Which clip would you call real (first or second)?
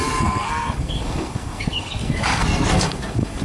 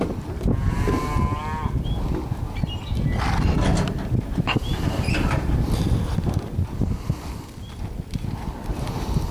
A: second